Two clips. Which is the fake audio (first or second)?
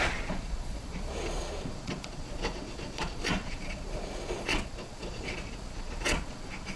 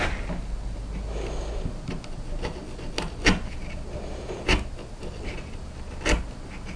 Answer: first